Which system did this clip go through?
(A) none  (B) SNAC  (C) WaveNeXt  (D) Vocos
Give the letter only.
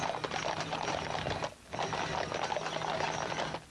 A